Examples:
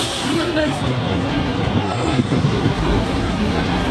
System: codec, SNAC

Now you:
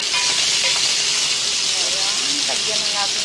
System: none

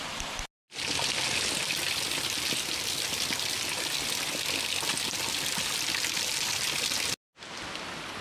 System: none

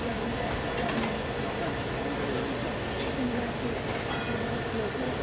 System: none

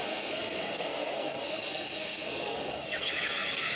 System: codec, SNAC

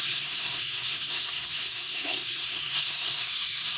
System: codec, SNAC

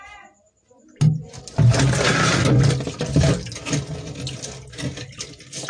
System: none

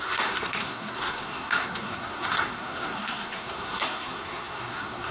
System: codec, SNAC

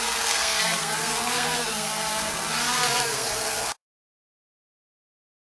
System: codec, SNAC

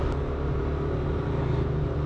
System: none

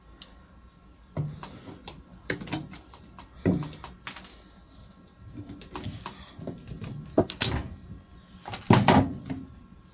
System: none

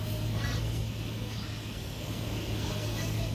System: codec, SNAC